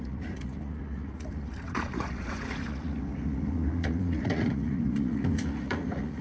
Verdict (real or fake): fake